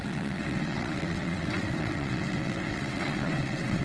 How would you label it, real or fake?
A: fake